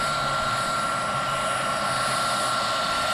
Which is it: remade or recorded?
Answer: recorded